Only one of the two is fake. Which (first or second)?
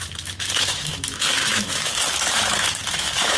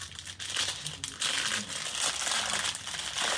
first